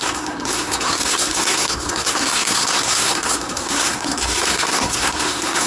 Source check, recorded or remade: remade